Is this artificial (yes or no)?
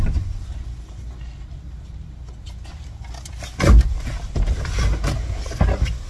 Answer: no